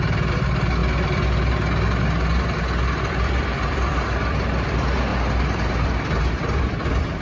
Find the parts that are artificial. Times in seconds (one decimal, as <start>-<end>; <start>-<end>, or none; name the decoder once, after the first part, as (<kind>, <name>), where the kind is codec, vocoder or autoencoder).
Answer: 0.0-0.8 (vocoder, BigVGAN v2); 3.0-5.1; 6.3-7.2